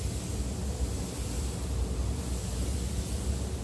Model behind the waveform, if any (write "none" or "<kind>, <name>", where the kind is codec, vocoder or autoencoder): none